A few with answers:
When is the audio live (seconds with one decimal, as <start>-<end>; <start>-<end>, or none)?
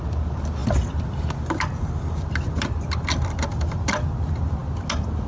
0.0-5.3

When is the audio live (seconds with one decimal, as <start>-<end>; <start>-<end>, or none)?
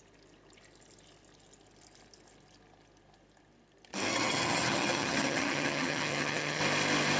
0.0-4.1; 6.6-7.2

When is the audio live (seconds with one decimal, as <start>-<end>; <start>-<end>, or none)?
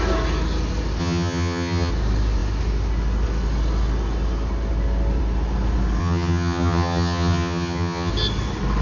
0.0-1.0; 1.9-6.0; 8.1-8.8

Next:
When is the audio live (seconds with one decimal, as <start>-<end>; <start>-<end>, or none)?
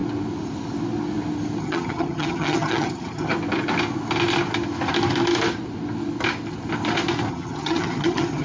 0.0-1.6; 3.3-7.3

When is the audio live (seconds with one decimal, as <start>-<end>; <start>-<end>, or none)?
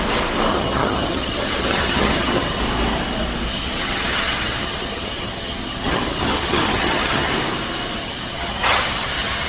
0.0-0.5; 2.6-3.5; 7.3-8.0